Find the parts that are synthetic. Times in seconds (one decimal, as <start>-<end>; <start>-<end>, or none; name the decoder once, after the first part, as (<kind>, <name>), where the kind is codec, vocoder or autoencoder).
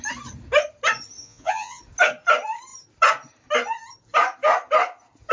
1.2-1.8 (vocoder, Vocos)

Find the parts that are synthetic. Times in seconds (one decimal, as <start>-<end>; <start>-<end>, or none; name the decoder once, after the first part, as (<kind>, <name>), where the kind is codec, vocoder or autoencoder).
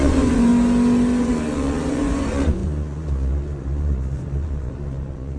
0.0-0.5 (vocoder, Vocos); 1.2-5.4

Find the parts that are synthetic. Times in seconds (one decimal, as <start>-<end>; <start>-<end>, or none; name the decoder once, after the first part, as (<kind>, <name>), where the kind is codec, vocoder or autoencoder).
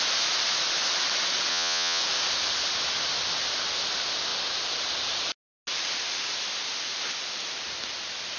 1.5-2.0 (vocoder, Vocos)